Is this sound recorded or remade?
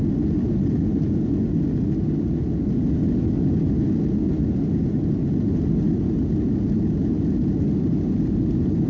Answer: recorded